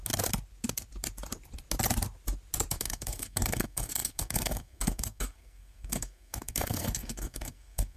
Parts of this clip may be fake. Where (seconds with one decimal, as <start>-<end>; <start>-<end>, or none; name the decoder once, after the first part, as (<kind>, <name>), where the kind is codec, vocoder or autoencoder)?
2.7-8.0 (codec, SNAC)